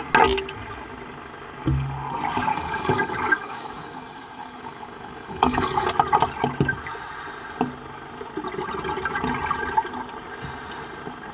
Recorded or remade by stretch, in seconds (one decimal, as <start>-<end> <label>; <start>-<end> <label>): 0.0-2.5 recorded; 2.5-5.9 remade; 5.9-11.3 recorded